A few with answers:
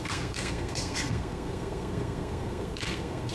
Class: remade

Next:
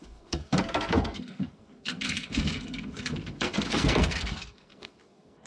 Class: remade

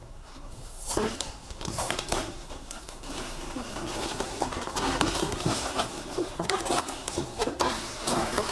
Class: remade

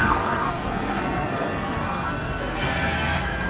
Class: remade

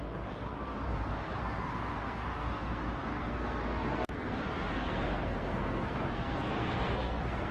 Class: remade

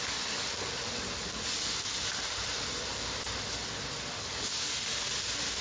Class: recorded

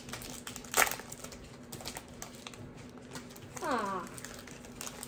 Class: recorded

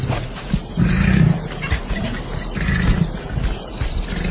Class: recorded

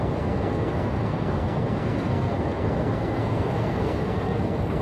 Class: remade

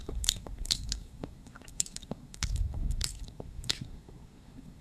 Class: remade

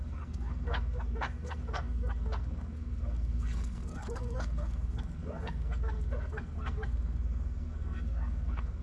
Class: remade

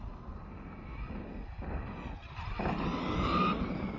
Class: recorded